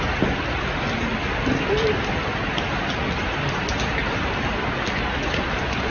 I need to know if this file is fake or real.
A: real